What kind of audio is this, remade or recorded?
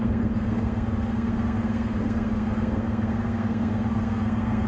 remade